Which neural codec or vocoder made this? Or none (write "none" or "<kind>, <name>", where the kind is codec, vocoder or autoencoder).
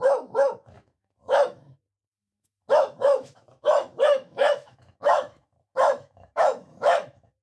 autoencoder, DAC-VAE